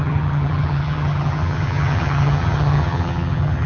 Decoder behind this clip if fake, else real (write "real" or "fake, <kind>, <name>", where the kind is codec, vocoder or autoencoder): fake, vocoder, HiFi-GAN